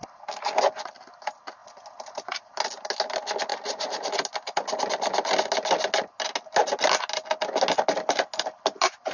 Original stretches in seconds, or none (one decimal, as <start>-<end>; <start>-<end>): 0.0-3.5; 4.1-9.1